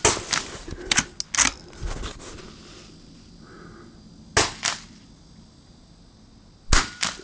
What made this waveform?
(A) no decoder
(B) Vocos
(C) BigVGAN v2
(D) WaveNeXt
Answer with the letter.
A